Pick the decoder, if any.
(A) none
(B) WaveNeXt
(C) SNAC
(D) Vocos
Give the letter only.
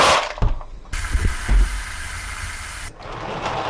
A